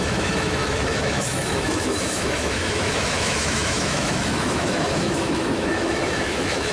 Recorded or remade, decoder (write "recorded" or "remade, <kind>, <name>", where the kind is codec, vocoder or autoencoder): remade, autoencoder, DAC-VAE